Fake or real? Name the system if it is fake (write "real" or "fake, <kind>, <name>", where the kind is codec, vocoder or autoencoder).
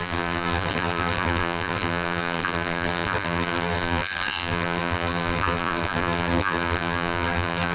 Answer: fake, vocoder, BigVGAN v2